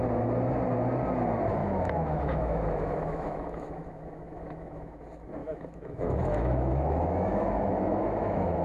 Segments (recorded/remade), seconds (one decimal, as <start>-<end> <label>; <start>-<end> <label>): 0.0-1.6 recorded; 1.6-5.0 remade; 5.0-5.4 recorded; 5.4-8.6 remade